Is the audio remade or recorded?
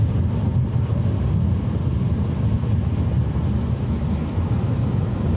recorded